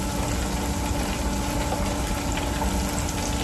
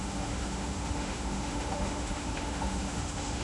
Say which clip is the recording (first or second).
first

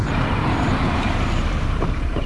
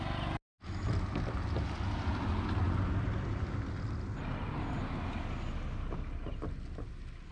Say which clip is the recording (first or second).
second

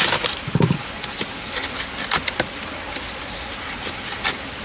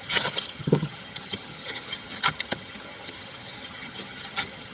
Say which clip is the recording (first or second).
first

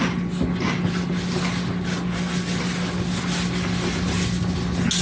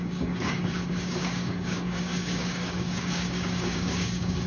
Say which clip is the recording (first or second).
first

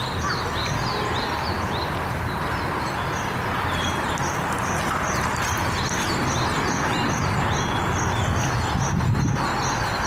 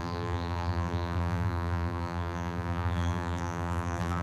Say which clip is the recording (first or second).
first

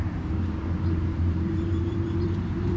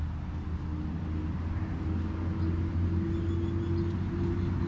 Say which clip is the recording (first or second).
second